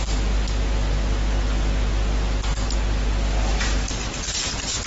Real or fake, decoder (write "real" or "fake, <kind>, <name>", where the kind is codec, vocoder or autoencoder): real